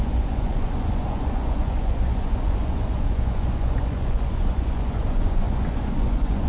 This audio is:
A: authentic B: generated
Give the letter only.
B